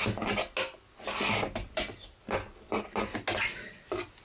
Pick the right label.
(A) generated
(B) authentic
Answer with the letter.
B